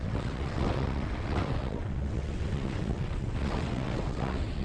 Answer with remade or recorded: remade